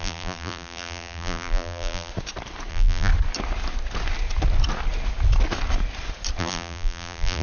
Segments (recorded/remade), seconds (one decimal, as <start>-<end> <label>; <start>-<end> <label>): 0.0-2.1 remade; 2.1-2.7 recorded; 2.7-3.1 remade; 3.1-6.4 recorded; 6.4-7.4 remade